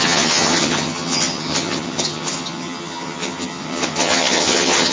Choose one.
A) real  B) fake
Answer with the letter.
B